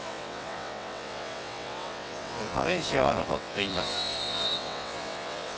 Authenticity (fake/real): fake